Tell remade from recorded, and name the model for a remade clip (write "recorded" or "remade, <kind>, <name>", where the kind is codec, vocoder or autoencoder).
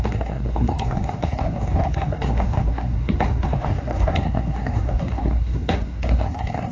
remade, codec, SNAC